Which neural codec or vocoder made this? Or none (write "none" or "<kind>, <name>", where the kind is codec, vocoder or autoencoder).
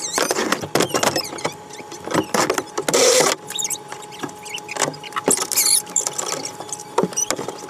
none